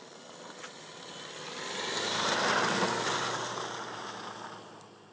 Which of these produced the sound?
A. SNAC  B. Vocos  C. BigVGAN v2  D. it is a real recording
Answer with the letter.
C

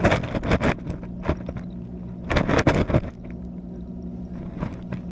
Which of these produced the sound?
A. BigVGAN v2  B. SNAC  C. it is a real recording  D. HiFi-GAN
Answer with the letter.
C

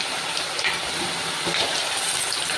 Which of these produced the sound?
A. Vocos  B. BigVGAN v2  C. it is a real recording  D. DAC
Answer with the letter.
B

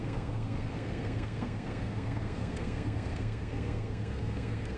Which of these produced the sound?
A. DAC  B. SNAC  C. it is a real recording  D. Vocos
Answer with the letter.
B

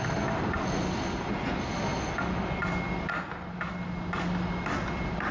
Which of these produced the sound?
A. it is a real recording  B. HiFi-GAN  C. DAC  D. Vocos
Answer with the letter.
A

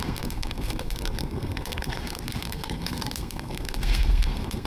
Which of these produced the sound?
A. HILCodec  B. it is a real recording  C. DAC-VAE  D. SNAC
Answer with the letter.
D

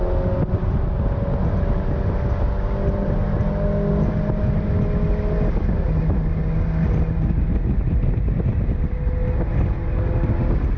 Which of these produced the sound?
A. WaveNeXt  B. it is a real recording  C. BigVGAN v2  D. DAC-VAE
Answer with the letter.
B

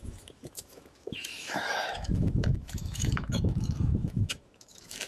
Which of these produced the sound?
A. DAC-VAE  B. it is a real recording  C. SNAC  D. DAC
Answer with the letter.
A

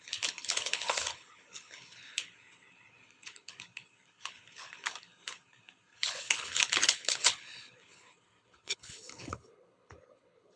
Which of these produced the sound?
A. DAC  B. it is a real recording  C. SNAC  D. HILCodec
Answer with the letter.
D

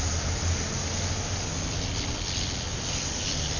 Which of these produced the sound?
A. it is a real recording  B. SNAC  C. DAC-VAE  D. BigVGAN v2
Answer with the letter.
A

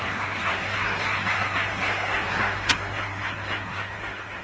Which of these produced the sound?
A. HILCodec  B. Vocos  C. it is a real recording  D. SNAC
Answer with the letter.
D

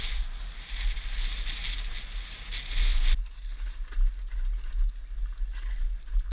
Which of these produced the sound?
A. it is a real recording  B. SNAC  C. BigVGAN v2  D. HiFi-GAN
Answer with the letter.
A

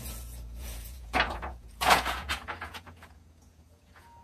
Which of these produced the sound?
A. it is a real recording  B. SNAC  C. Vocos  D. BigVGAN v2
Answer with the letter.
C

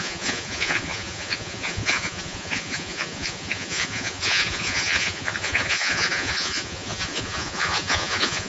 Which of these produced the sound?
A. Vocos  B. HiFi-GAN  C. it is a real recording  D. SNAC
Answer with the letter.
A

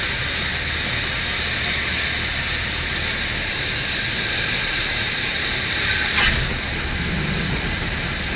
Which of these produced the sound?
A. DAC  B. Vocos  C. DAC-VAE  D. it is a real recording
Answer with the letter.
D